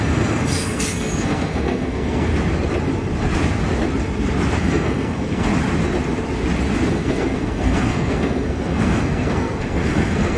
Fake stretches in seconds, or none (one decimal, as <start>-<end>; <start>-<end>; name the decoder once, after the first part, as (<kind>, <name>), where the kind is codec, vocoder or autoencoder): 0.0-2.3 (codec, SNAC); 4.6-5.5; 6.9-10.4